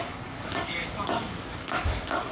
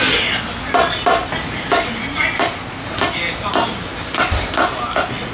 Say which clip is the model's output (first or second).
first